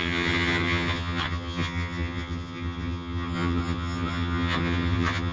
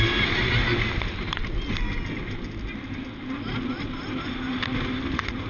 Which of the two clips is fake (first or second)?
first